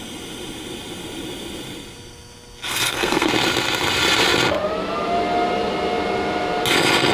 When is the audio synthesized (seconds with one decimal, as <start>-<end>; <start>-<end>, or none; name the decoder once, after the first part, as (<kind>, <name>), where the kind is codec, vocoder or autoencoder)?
2.7-3.3 (codec, SNAC)